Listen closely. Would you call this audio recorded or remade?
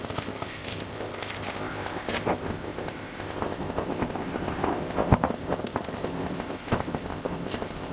remade